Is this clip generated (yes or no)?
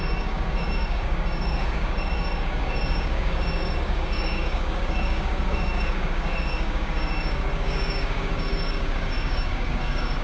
yes